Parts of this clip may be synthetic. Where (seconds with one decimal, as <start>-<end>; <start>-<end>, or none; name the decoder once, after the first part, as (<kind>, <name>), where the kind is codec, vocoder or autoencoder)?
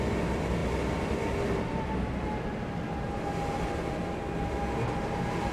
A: none